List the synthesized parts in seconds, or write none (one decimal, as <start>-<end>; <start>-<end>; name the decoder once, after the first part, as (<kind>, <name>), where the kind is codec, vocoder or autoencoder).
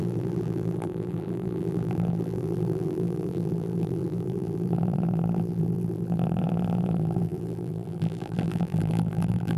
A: 0.0-9.6 (vocoder, BigVGAN v2)